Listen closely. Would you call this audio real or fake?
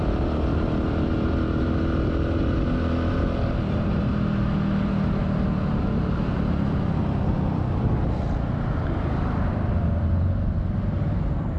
real